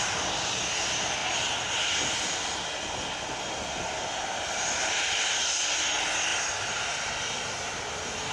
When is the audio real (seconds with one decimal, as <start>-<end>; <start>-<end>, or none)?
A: 0.0-8.3